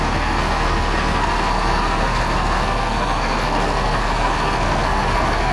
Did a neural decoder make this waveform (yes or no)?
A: yes